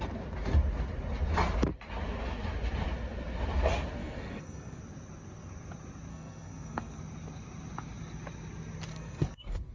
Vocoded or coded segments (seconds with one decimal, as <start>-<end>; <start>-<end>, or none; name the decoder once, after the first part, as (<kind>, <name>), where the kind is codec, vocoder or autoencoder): 4.0-4.8 (codec, SNAC); 6.1-7.0; 8.9-9.7